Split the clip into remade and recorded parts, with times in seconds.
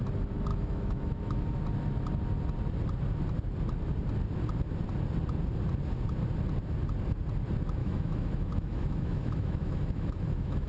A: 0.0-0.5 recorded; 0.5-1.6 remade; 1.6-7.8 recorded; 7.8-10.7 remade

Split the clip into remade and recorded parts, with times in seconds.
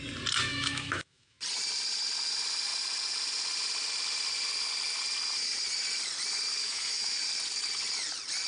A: 0.0-0.5 recorded; 0.5-1.4 remade; 1.4-6.6 recorded; 6.6-7.2 remade; 7.2-8.5 recorded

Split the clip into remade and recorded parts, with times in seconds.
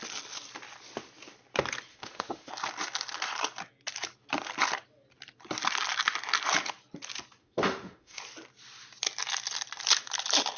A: 0.0-1.9 recorded; 1.9-2.5 remade; 2.5-7.4 recorded; 7.4-8.2 remade; 8.2-10.6 recorded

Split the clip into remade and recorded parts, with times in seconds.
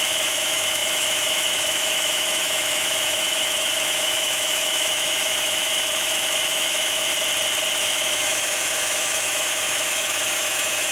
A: 0.0-7.1 remade; 7.1-7.8 recorded; 7.8-10.9 remade